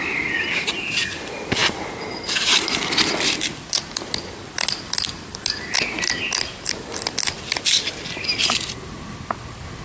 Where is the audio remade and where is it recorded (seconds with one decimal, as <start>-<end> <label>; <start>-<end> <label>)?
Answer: 0.0-9.8 recorded